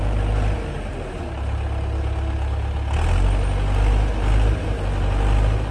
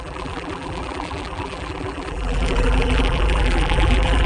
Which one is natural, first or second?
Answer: first